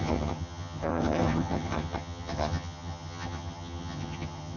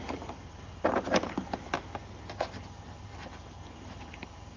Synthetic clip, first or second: first